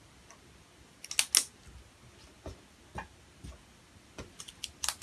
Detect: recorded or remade recorded